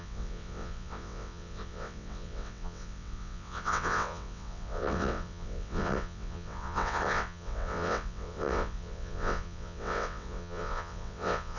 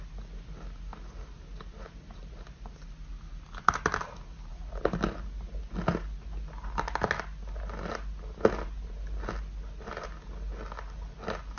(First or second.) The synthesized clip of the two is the first